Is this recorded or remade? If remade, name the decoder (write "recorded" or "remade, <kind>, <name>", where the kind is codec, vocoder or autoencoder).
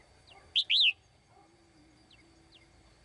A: recorded